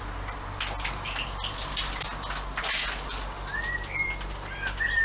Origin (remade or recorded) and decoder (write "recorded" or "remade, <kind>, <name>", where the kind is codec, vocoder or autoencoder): recorded